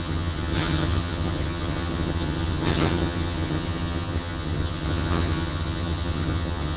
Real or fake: fake